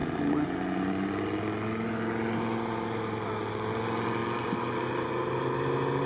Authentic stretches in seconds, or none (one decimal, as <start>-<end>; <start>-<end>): 0.0-6.1